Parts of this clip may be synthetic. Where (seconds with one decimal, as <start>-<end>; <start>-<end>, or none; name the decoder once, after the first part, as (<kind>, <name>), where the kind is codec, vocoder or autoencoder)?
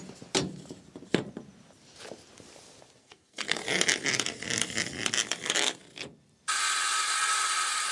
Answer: 3.0-3.6 (codec, SNAC)